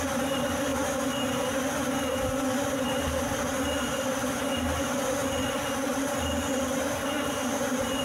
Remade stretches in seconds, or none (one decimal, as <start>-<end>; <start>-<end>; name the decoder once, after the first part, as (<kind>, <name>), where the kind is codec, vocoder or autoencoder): none